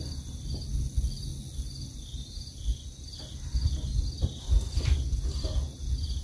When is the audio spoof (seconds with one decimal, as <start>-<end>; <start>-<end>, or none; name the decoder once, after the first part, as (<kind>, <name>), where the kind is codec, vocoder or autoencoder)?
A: none